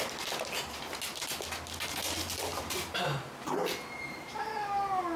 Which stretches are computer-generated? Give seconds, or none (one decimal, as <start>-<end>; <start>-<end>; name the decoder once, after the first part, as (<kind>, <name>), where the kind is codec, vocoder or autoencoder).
2.5-4.5 (vocoder, BigVGAN v2)

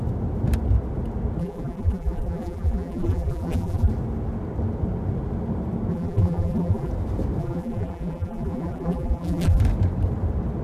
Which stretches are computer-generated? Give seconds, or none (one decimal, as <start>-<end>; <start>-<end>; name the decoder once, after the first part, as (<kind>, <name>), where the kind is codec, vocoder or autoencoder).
1.4-3.9 (vocoder, BigVGAN v2); 5.9-6.9; 7.4-9.6

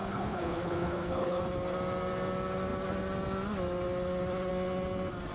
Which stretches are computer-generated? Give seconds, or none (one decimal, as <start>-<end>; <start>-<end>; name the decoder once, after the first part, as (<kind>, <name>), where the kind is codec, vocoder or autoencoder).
0.0-1.4 (codec, HILCodec)

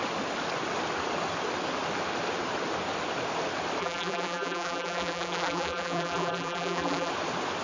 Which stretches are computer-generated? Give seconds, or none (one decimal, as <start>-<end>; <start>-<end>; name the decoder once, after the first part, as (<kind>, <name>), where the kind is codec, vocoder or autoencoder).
3.8-7.1 (vocoder, BigVGAN v2)